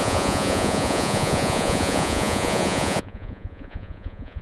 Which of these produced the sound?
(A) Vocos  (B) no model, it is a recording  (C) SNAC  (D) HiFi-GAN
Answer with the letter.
A